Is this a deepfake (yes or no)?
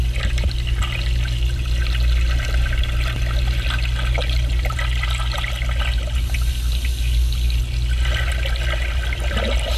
no